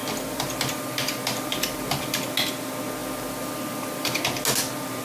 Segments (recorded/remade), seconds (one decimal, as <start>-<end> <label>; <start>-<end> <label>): 0.0-2.2 remade; 2.2-3.0 recorded; 3.0-4.2 remade; 4.2-5.0 recorded